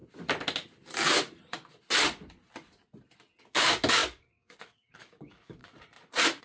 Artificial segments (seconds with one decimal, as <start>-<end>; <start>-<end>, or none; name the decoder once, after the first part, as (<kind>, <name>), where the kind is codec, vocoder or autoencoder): 3.4-5.6 (codec, DAC)